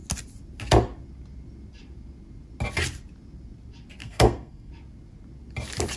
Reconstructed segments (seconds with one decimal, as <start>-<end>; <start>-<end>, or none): 4.0-4.7